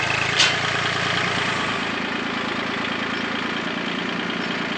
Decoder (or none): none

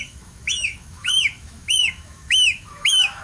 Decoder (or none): autoencoder, DAC-VAE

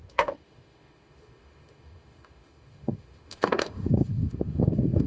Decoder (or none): autoencoder, DAC-VAE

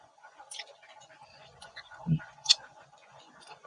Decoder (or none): vocoder, Vocos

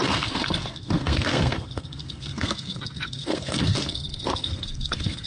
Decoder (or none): codec, SNAC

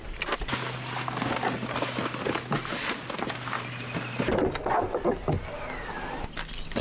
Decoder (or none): none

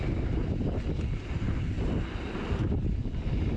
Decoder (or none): none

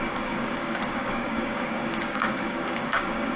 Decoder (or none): codec, DAC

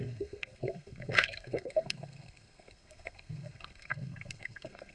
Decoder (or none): codec, SNAC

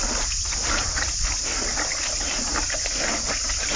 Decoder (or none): none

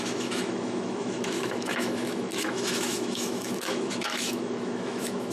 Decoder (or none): autoencoder, DAC-VAE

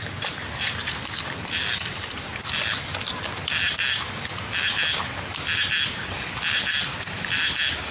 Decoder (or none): none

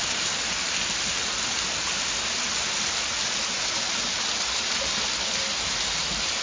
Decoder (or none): none